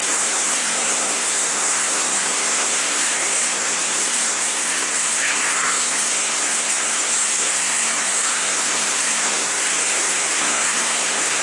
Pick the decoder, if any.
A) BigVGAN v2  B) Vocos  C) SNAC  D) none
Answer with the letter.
C